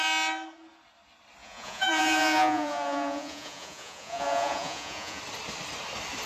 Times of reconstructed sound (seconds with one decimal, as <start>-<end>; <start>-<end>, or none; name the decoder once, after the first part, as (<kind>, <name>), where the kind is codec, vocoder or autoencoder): 1.4-5.2 (vocoder, Vocos)